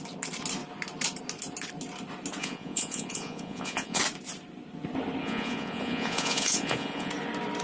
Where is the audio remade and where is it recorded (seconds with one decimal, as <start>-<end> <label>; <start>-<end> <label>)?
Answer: 0.0-2.4 recorded; 2.4-4.0 remade; 4.0-5.2 recorded; 5.2-7.1 remade; 7.1-7.6 recorded